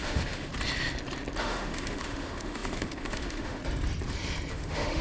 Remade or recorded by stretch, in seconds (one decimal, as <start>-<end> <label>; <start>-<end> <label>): 0.0-0.5 remade; 0.5-1.4 recorded; 1.4-3.6 remade; 3.6-4.5 recorded; 4.5-5.0 remade